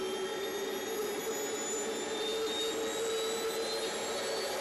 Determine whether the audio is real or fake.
real